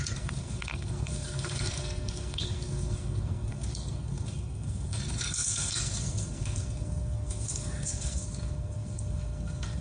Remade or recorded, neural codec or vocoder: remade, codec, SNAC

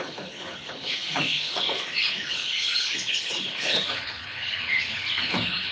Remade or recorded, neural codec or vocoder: remade, codec, HILCodec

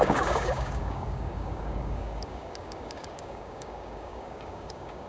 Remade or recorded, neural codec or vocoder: remade, codec, DAC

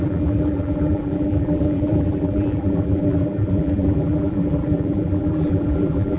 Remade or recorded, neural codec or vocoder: remade, vocoder, BigVGAN v2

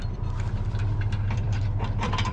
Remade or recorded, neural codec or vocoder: remade, vocoder, BigVGAN v2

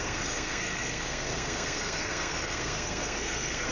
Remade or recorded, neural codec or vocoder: remade, codec, SNAC